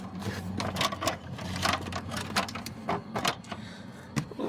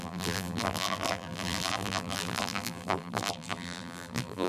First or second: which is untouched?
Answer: first